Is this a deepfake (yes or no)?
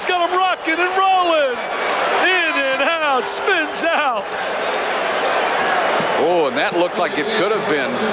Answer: no